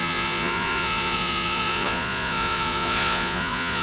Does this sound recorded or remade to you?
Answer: remade